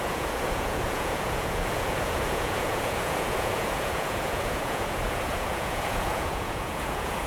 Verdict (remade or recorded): remade